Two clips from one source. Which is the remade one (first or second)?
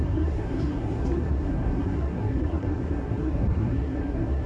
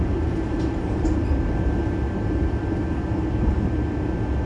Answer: first